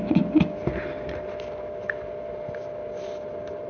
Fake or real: real